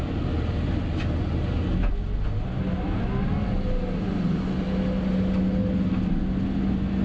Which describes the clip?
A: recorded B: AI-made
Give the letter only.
A